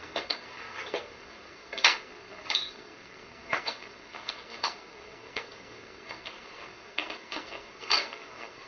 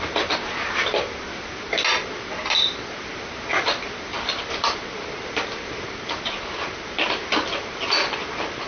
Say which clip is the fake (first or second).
first